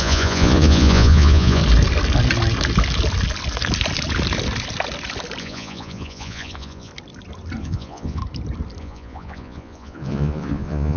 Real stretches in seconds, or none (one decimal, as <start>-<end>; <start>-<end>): 1.6-5.4; 6.9-7.6; 8.2-8.8